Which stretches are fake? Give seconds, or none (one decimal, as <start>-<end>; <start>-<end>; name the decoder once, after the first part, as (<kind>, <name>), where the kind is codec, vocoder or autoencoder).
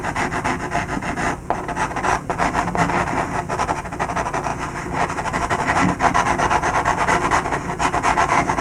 none